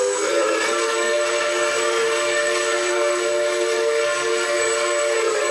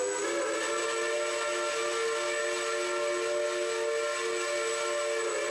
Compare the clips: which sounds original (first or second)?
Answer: second